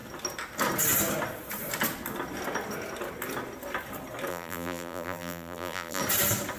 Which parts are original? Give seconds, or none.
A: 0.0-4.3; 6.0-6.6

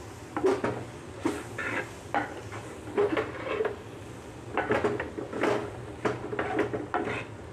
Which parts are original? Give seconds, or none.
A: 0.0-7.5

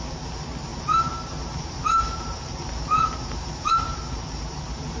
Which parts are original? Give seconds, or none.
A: none